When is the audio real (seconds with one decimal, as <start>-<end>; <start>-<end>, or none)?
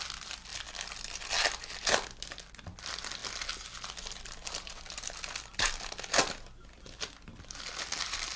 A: 0.0-8.4